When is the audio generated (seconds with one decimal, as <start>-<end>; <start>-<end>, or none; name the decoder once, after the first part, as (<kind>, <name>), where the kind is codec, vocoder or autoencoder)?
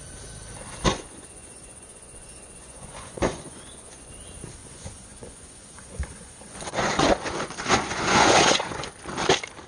0.9-4.1 (vocoder, Vocos); 4.6-8.9